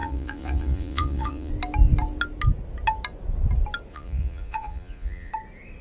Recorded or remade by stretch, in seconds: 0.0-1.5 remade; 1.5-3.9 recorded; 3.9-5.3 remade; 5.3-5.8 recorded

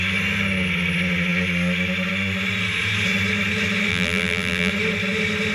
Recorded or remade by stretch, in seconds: 0.0-3.9 recorded; 3.9-4.7 remade; 4.7-5.5 recorded

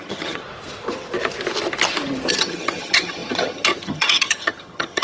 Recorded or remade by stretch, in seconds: 0.0-0.4 remade; 0.4-2.3 recorded; 2.3-5.0 remade

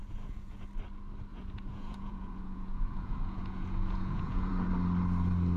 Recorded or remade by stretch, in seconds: 0.0-0.7 remade; 0.7-1.3 recorded; 1.3-4.7 remade; 4.7-5.6 recorded

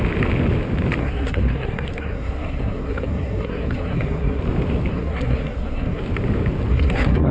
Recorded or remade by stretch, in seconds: 0.0-1.0 recorded; 1.0-4.4 remade; 4.4-4.9 recorded; 4.9-6.0 remade; 6.0-6.7 recorded; 6.7-7.3 remade

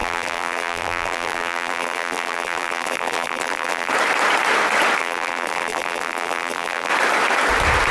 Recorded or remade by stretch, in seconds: 0.0-3.9 remade; 3.9-5.0 recorded; 5.0-6.9 remade; 6.9-7.9 recorded